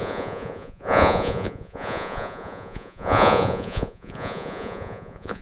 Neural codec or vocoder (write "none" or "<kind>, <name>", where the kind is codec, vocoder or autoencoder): vocoder, Vocos